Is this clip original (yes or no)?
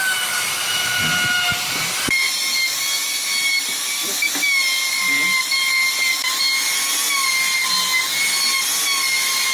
yes